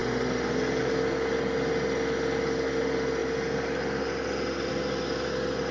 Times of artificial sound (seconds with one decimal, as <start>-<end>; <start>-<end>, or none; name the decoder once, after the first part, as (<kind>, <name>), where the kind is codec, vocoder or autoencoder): none